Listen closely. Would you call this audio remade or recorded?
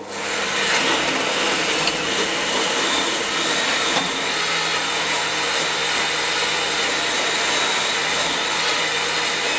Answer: recorded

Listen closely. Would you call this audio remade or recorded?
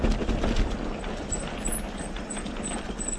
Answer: recorded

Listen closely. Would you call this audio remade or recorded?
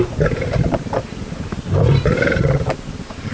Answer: recorded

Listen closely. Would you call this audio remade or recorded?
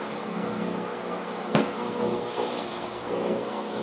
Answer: remade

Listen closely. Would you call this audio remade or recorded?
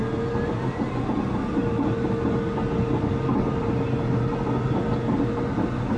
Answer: recorded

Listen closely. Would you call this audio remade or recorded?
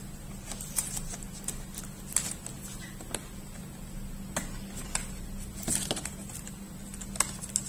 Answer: recorded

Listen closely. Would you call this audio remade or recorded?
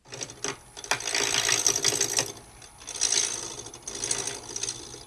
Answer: recorded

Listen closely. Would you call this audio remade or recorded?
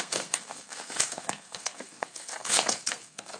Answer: remade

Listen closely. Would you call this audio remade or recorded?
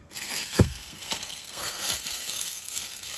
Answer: remade